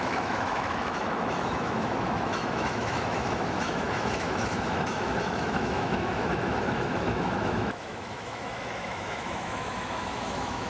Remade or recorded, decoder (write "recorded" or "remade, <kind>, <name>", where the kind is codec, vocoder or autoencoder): remade, autoencoder, DAC-VAE